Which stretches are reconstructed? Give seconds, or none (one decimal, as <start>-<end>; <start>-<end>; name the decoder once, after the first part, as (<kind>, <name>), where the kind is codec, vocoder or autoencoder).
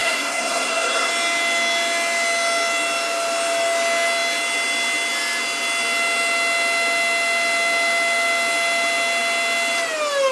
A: 0.0-1.1 (codec, SNAC)